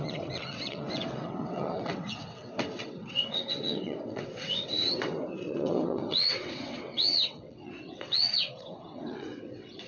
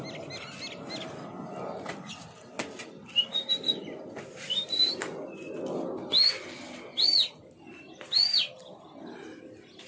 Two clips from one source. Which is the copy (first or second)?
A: first